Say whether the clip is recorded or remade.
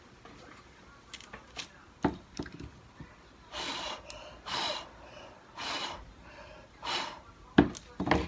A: recorded